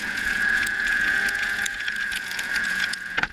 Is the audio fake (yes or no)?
yes